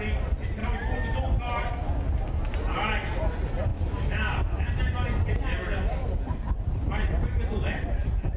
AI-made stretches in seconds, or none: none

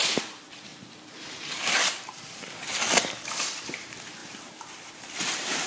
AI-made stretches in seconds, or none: 0.0-2.7; 3.4-5.7

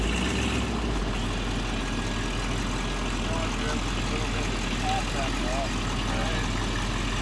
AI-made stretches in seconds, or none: none

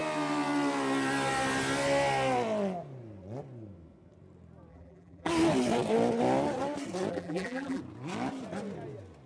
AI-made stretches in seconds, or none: 4.7-5.3; 7.1-7.8

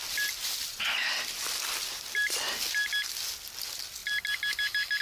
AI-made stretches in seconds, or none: none

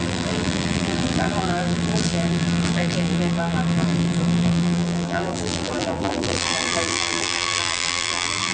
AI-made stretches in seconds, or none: 0.0-8.5